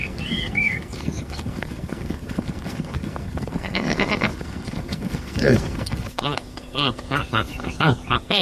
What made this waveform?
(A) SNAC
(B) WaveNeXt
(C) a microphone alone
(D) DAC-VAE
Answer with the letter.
A